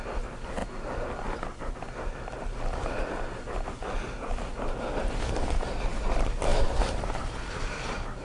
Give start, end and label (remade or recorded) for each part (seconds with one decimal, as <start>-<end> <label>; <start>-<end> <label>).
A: 0.0-6.5 recorded; 6.5-7.2 remade; 7.2-8.2 recorded